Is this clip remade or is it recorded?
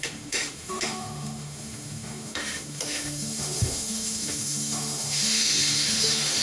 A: remade